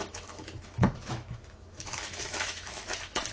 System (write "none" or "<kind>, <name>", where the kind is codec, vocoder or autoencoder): autoencoder, DAC-VAE